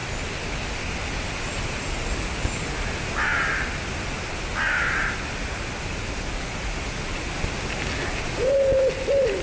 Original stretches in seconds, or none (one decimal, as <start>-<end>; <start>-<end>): 0.0-9.4